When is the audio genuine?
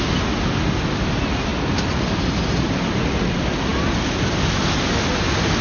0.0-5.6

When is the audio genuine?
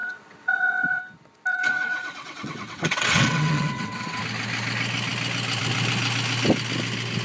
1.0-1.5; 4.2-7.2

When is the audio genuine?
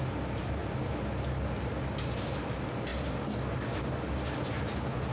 0.6-2.0; 2.9-4.5